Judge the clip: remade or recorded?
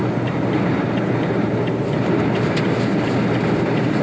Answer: remade